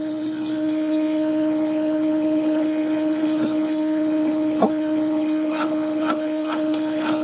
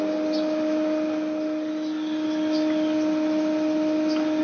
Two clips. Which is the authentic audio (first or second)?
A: second